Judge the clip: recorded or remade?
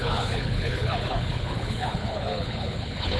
remade